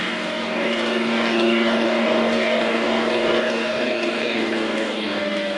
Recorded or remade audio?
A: remade